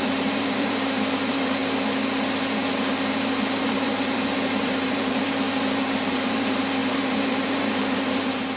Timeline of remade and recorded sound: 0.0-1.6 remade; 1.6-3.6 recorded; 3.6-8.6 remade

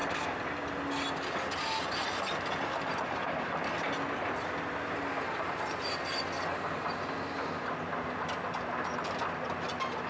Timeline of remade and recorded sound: 0.0-10.1 recorded

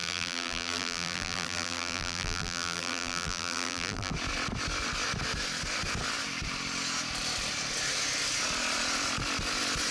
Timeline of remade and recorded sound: 0.0-4.1 remade; 4.1-9.9 recorded

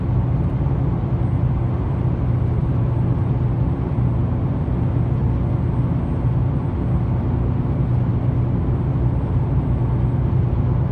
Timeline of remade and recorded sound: 0.0-2.6 recorded; 2.6-3.3 remade; 3.3-10.9 recorded

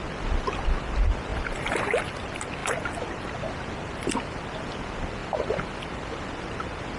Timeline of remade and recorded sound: 0.0-7.0 recorded